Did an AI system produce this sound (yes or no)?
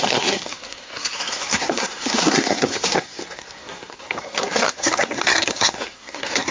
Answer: yes